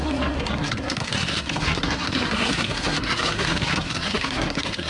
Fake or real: fake